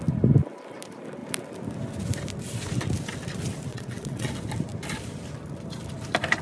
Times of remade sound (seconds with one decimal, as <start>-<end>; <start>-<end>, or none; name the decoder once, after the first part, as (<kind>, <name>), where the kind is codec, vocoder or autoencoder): 3.7-4.3 (vocoder, WaveNeXt)